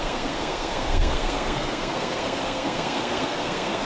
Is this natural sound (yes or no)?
no